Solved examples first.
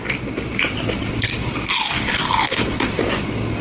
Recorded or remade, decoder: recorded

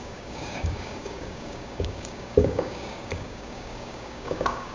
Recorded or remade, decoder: remade, codec, DAC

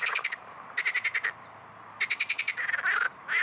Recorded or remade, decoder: recorded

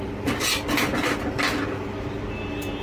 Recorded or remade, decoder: recorded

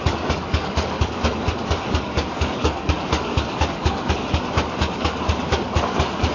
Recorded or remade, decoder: remade, codec, DAC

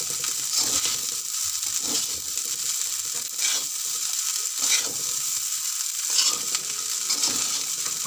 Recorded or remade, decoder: recorded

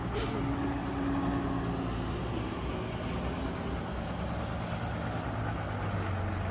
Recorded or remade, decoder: recorded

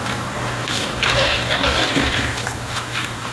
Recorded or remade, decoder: remade, codec, DAC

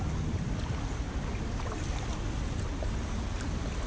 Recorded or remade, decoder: recorded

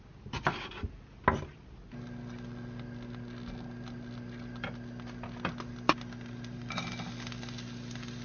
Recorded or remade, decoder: recorded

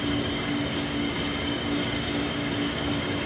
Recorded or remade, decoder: remade, codec, DAC